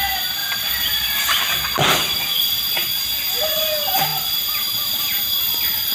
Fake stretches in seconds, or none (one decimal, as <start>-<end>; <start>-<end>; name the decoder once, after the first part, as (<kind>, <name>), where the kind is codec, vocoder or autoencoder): none

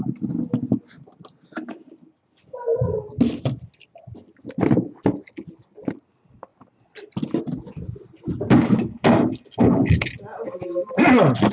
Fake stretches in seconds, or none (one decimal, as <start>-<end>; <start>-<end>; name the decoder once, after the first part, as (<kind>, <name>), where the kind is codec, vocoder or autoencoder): none

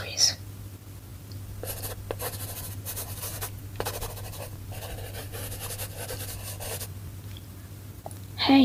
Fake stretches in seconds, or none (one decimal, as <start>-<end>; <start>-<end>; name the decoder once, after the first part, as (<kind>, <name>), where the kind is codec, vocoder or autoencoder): none

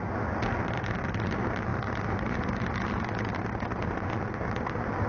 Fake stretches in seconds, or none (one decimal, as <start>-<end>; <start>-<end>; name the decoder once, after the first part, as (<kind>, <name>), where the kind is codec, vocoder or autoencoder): 1.7-3.8 (vocoder, BigVGAN v2)

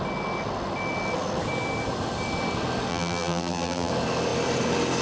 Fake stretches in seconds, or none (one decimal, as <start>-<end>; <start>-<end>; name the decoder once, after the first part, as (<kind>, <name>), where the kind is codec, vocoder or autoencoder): 2.9-3.9 (vocoder, BigVGAN v2)

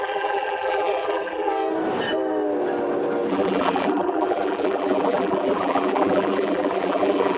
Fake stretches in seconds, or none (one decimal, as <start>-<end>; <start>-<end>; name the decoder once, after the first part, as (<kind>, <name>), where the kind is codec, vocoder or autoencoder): 0.0-1.5 (vocoder, BigVGAN v2); 3.3-7.4

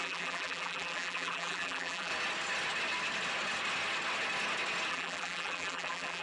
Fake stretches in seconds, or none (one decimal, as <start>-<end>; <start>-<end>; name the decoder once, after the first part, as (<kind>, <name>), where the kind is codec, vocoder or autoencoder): 0.0-2.1 (vocoder, BigVGAN v2); 4.9-6.2